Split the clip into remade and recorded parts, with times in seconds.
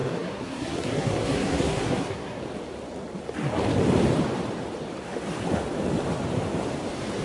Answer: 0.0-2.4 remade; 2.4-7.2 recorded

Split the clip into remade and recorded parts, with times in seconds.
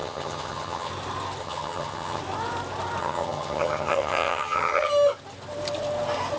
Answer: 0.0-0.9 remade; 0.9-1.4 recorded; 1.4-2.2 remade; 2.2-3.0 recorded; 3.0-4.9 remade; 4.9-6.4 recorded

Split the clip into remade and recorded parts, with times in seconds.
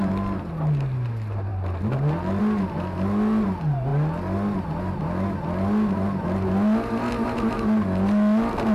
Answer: 0.0-8.7 recorded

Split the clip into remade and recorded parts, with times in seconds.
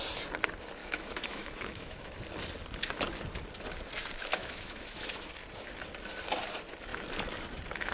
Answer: 0.0-0.8 recorded; 0.8-2.2 remade; 2.2-4.3 recorded; 4.3-5.3 remade; 5.3-7.9 recorded